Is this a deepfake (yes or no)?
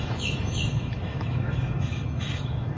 yes